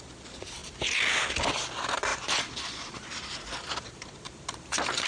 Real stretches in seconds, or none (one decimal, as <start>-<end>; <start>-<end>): 0.6-1.3